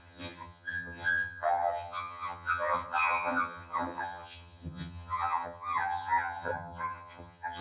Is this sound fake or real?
fake